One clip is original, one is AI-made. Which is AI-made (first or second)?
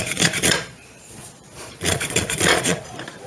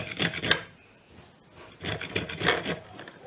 first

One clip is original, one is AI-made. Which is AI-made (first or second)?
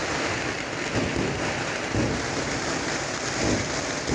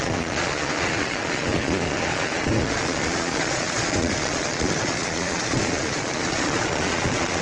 second